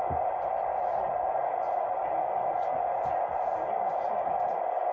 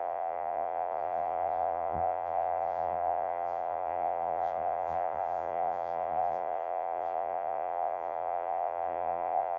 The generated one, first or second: second